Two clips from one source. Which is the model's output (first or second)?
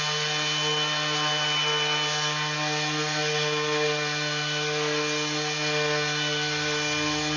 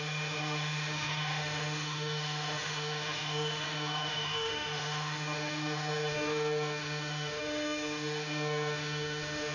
second